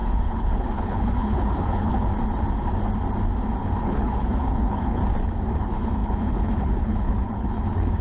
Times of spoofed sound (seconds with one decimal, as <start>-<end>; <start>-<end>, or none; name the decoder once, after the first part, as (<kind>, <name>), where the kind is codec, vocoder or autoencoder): 0.0-2.1 (codec, HILCodec); 3.8-5.0; 5.6-8.0